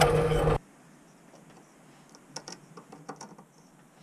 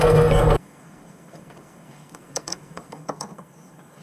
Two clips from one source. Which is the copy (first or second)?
second